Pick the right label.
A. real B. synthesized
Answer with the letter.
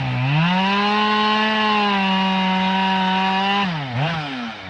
A